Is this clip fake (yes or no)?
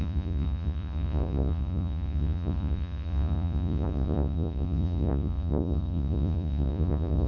yes